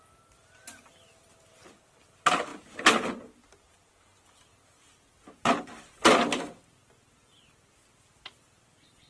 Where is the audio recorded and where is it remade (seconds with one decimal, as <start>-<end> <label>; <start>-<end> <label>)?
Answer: 0.0-9.1 recorded